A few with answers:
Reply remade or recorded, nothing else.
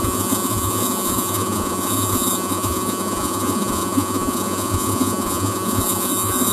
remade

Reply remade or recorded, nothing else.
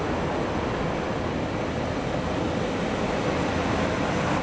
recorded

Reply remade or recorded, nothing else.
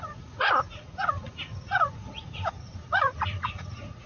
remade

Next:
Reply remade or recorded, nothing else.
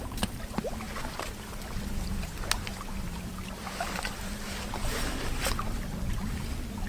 recorded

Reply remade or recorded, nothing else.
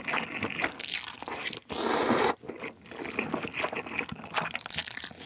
recorded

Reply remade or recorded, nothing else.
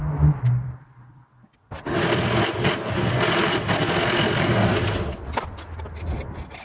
recorded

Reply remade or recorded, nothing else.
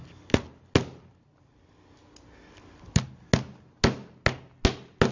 recorded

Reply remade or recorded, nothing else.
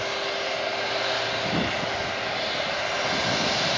recorded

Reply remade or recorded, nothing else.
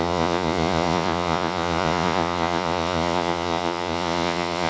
remade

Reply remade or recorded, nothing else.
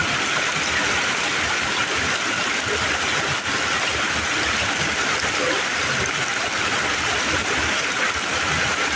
recorded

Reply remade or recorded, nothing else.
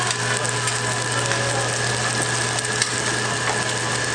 recorded